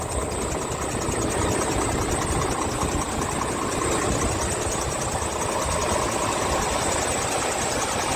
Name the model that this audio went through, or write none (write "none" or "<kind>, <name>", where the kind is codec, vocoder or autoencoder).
none